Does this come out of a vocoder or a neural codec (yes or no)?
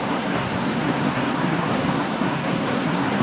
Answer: yes